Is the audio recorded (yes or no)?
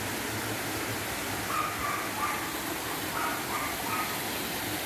yes